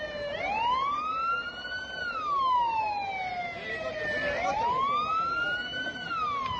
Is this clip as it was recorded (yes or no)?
yes